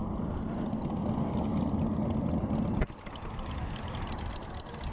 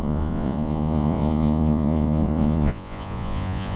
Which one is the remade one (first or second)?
second